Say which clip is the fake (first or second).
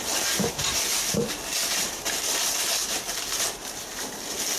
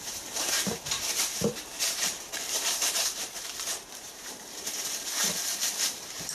second